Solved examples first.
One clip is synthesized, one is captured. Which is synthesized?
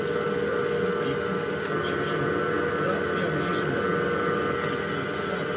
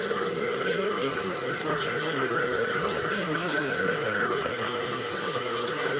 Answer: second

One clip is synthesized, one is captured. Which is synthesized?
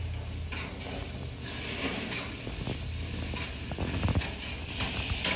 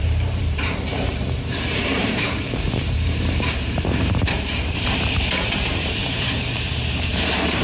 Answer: second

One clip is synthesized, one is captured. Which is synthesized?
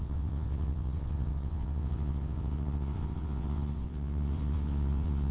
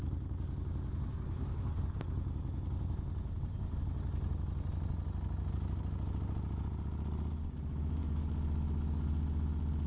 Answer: first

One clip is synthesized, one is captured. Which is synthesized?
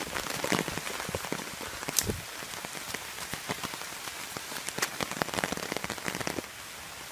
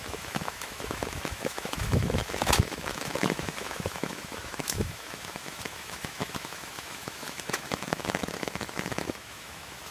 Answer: second